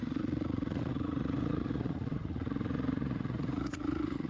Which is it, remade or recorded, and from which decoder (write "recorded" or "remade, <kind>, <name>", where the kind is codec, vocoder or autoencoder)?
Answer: remade, vocoder, Vocos